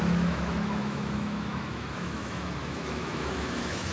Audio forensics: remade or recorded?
remade